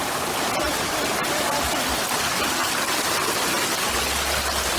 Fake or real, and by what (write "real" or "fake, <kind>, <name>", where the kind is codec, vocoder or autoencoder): real